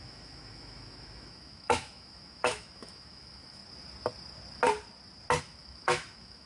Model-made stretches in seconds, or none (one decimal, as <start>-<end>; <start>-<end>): 0.0-3.6; 5.4-6.5